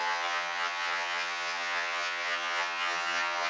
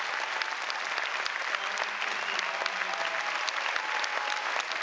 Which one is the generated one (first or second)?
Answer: first